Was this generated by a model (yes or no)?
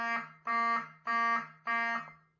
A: no